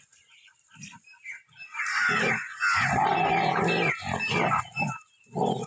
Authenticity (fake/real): real